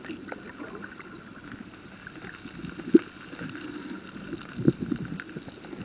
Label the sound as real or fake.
real